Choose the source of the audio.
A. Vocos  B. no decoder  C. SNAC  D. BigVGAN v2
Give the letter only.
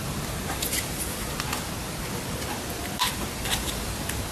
B